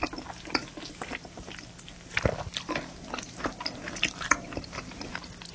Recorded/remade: recorded